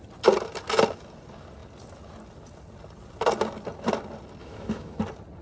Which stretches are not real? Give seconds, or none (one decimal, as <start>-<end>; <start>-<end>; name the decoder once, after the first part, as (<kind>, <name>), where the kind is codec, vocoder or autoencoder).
4.4-5.0 (autoencoder, DAC-VAE)